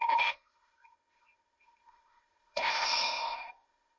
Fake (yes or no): yes